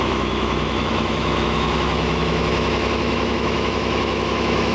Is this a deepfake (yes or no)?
yes